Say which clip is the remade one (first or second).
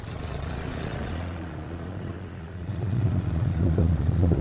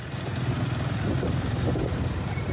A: first